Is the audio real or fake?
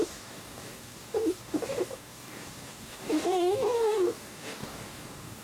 fake